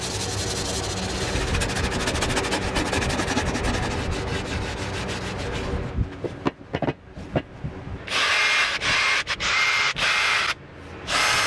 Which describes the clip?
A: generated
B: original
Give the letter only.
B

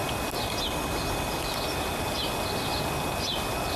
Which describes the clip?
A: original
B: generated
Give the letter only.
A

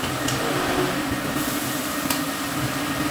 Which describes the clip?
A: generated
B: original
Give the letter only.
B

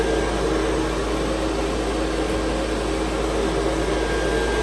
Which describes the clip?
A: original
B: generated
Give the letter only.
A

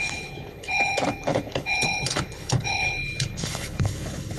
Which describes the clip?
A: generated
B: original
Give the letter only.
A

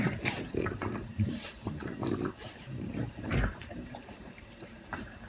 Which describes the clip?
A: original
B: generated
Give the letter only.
B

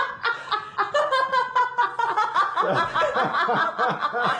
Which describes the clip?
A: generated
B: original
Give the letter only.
B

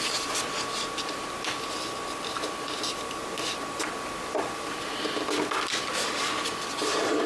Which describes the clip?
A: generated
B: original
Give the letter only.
B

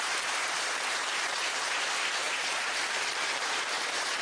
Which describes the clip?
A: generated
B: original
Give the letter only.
A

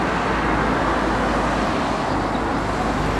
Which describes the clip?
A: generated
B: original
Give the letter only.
B